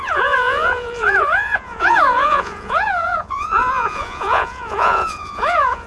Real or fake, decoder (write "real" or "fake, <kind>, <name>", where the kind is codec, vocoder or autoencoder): fake, vocoder, Vocos